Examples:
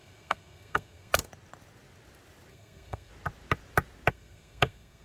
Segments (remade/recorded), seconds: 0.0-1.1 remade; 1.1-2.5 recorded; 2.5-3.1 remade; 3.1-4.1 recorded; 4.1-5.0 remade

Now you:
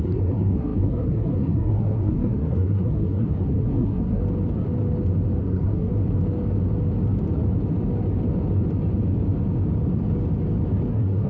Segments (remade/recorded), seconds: 0.0-4.2 remade; 4.2-5.4 recorded; 5.4-5.9 remade; 5.9-10.9 recorded; 10.9-11.3 remade

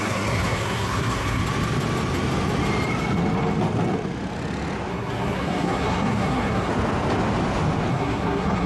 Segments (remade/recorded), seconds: 0.0-1.4 remade; 1.4-4.9 recorded; 4.9-6.7 remade; 6.7-7.9 recorded; 7.9-8.7 remade